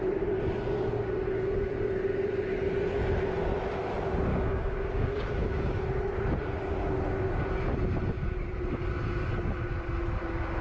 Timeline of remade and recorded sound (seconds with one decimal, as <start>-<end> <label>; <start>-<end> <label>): 0.0-4.3 recorded; 4.3-5.8 remade; 5.8-10.6 recorded